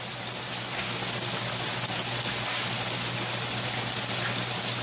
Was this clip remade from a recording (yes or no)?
no